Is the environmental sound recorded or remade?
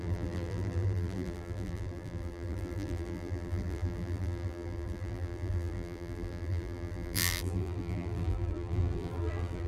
remade